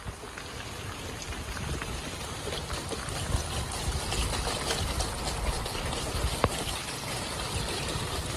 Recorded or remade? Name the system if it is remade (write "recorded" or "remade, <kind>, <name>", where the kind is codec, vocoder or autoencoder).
recorded